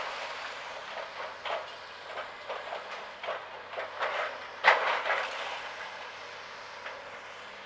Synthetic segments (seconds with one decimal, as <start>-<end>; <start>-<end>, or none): none